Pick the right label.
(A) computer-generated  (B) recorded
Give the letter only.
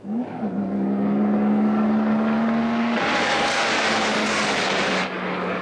A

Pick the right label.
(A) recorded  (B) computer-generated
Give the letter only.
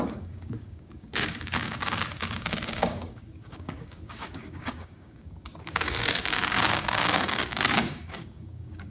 B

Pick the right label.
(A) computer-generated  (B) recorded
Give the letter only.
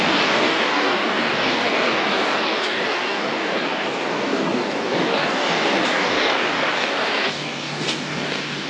A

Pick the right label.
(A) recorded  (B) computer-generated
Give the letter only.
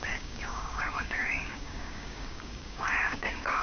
B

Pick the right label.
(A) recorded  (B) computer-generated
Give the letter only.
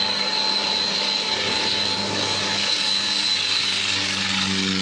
B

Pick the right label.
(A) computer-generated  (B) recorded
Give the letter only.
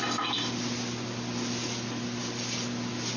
B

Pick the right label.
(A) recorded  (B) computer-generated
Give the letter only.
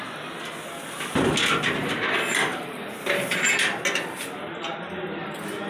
A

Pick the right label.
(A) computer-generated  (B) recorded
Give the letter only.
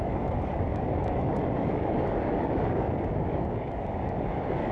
A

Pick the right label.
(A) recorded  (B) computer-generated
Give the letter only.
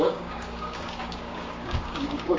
B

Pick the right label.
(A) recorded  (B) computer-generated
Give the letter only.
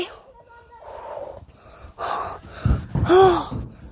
A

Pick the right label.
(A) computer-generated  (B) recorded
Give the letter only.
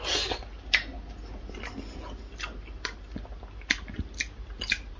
B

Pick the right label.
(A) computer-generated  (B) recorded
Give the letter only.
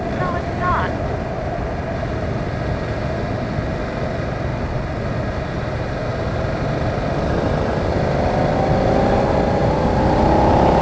B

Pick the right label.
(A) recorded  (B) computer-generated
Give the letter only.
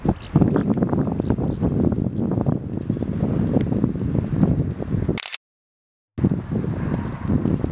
A